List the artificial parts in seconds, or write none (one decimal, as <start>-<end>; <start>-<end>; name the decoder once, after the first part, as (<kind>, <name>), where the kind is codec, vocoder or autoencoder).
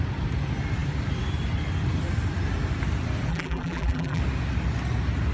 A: 3.3-4.2 (vocoder, BigVGAN v2)